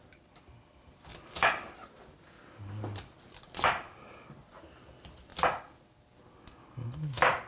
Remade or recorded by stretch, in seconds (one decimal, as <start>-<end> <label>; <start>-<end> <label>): 0.0-7.5 recorded